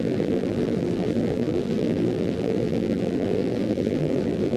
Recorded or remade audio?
remade